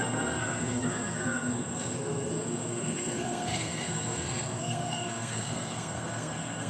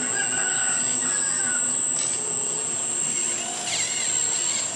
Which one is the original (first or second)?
second